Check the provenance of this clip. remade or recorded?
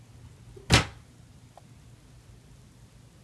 recorded